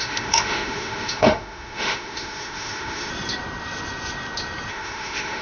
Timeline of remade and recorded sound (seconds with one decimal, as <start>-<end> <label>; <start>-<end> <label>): 0.0-3.1 remade; 3.1-4.7 recorded; 4.7-5.4 remade